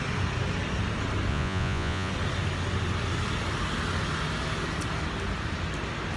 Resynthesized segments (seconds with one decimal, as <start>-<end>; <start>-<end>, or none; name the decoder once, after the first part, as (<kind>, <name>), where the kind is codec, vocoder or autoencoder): 1.3-2.1 (vocoder, Vocos)